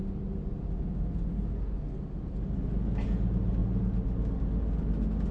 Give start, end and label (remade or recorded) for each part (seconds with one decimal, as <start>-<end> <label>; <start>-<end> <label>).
0.0-5.3 recorded